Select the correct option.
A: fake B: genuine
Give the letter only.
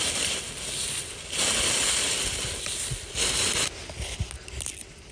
B